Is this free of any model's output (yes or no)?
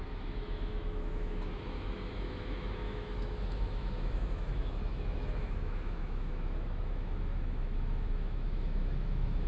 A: no